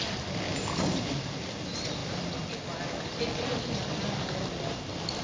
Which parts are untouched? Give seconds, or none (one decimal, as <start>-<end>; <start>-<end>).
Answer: 0.0-5.2